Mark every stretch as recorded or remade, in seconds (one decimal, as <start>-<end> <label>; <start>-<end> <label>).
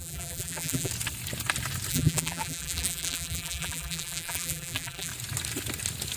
0.0-0.9 remade; 0.9-1.9 recorded; 1.9-5.1 remade; 5.1-6.2 recorded